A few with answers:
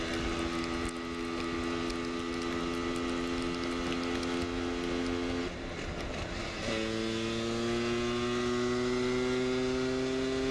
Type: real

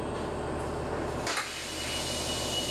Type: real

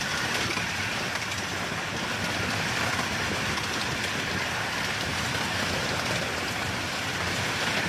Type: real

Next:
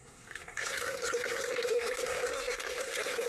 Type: fake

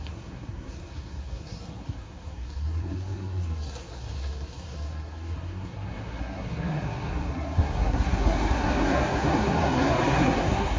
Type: fake